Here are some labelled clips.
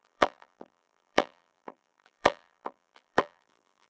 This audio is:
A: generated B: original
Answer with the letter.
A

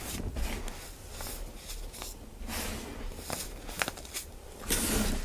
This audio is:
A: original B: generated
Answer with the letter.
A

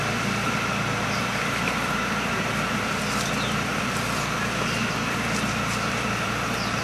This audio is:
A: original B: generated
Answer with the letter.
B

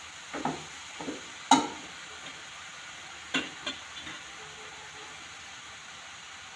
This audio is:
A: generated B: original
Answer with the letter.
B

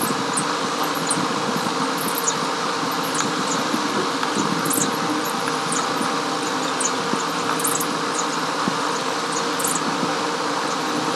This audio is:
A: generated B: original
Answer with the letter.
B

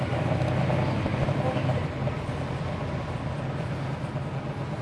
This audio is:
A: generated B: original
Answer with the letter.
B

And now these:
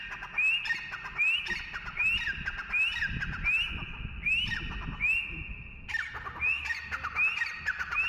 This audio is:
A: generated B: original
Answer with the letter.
B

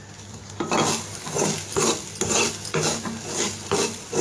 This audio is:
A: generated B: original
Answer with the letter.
B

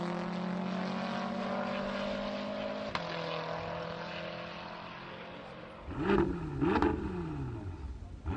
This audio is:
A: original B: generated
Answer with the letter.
A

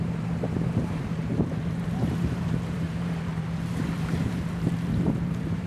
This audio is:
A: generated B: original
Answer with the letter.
A